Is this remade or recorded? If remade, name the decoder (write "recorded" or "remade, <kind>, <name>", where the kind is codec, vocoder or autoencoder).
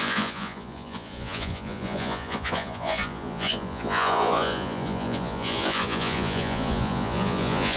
remade, vocoder, Vocos